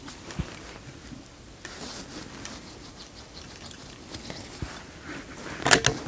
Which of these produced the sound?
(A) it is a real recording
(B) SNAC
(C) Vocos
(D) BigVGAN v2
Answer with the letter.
A